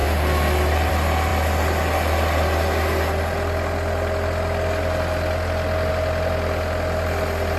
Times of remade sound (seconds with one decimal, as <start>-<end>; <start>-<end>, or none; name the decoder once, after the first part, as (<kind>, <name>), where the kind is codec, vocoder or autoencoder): none